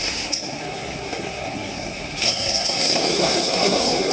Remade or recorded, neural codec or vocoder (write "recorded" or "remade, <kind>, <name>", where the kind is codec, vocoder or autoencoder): remade, codec, SNAC